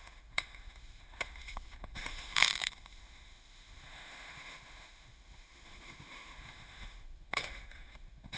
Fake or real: fake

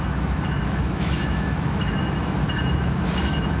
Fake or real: fake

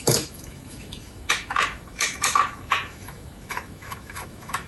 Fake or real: fake